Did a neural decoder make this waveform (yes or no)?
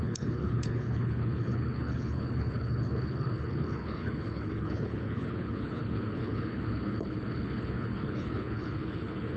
yes